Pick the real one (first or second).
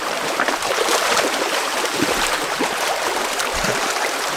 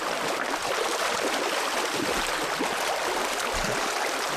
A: second